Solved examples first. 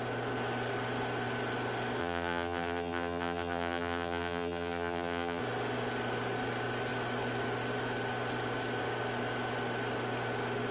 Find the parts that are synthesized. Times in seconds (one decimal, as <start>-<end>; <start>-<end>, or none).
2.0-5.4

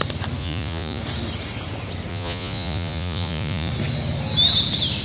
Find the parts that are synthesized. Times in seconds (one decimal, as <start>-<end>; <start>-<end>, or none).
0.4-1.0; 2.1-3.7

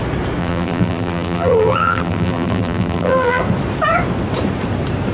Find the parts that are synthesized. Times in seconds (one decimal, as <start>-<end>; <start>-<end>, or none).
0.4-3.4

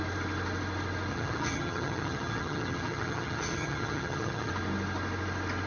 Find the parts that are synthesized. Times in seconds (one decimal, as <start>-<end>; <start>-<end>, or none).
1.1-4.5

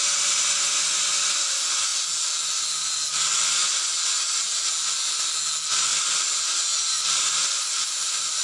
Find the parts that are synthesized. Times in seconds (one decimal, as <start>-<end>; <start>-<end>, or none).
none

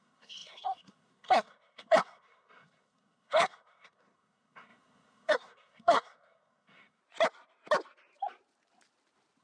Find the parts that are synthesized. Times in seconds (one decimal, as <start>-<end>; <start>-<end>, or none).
0.0-7.0